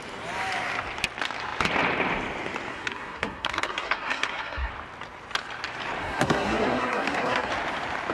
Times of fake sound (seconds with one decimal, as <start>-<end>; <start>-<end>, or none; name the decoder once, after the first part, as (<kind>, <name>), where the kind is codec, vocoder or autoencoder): 2.7-4.7 (codec, SNAC); 6.0-7.5